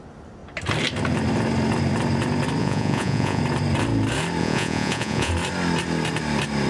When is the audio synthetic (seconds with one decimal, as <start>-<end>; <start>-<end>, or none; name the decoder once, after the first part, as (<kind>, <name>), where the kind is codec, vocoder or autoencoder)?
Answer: 2.6-3.4 (vocoder, Vocos); 4.4-5.3